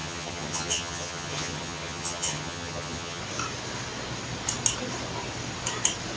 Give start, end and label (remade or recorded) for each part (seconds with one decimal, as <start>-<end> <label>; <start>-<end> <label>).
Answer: 0.0-3.2 remade; 3.2-6.2 recorded